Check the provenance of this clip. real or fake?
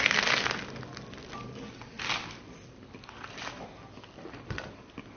fake